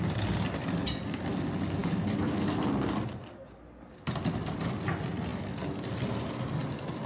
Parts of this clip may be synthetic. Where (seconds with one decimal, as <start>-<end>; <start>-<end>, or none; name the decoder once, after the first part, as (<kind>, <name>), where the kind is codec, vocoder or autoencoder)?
none